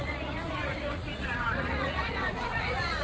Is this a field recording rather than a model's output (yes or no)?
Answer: no